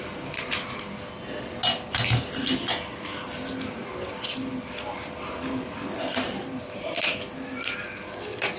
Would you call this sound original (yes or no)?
yes